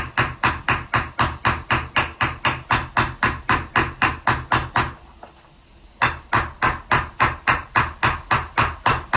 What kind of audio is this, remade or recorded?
recorded